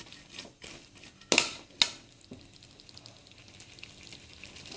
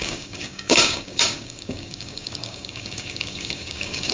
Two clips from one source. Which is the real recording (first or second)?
first